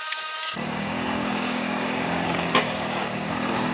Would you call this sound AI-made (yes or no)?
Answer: yes